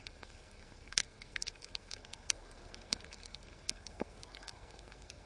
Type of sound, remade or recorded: remade